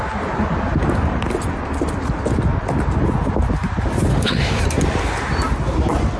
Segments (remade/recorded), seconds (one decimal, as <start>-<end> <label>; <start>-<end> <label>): 0.0-4.1 recorded; 4.1-4.6 remade; 4.6-6.2 recorded